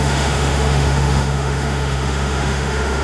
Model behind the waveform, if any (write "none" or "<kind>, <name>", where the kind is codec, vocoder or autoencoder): autoencoder, DAC-VAE